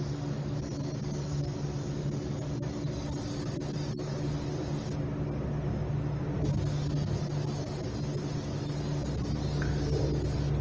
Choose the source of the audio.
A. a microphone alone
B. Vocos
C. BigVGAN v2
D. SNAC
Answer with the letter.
A